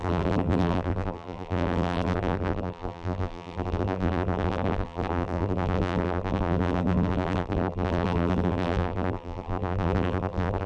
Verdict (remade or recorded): remade